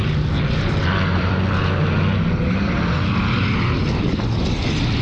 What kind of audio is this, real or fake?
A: real